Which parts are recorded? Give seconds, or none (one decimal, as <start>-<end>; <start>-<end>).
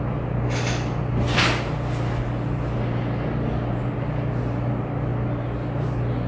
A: 0.0-6.3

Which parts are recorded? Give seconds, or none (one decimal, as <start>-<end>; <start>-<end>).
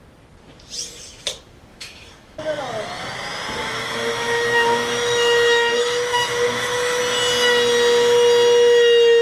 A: 0.0-1.7; 2.6-3.6; 7.0-9.2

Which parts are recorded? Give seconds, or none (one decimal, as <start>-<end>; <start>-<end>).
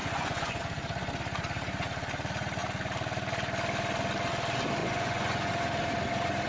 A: 0.6-4.8; 5.5-6.5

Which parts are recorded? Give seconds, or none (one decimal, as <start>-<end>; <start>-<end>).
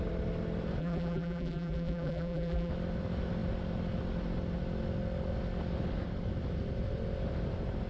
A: 0.0-0.8; 2.7-7.9